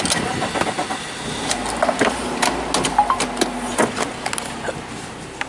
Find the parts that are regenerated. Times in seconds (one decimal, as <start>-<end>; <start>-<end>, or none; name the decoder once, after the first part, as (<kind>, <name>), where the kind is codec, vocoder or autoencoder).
none